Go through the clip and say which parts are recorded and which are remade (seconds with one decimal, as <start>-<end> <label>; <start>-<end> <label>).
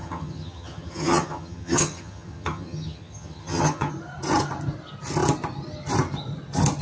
0.0-3.9 remade; 3.9-6.8 recorded